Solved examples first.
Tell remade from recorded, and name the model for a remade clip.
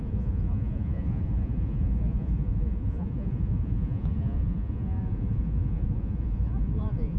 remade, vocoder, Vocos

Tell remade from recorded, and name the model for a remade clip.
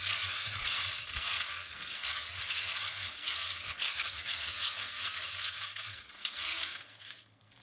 remade, codec, SNAC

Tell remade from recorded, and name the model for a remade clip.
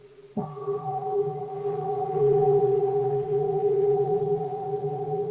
remade, vocoder, Vocos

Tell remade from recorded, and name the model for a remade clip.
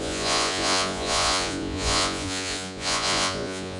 remade, vocoder, Vocos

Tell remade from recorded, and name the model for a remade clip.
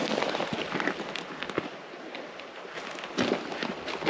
recorded